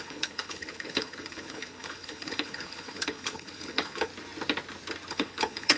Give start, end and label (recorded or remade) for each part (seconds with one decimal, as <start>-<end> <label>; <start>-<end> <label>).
0.0-4.1 remade; 4.1-5.1 recorded; 5.1-5.8 remade